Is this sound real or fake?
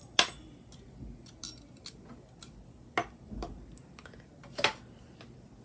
real